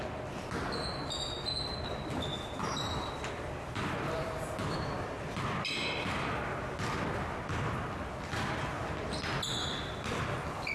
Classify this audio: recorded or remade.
recorded